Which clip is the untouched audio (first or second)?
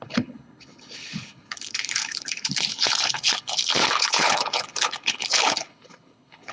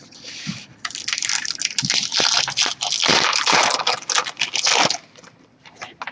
second